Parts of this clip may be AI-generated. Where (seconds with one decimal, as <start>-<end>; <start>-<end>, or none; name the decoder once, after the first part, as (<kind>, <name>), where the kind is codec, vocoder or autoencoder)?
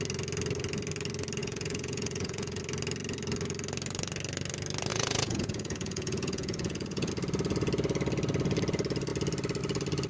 1.4-2.6 (vocoder, Vocos); 4.9-7.1